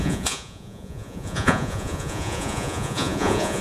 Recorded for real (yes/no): no